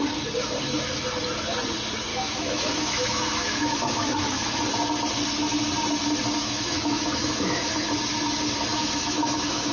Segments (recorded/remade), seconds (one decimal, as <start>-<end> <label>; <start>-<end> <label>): 0.0-2.1 recorded; 2.1-4.6 remade; 4.6-6.4 recorded; 6.4-7.9 remade; 7.9-8.7 recorded; 8.7-9.7 remade